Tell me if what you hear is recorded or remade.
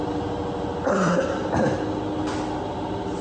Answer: recorded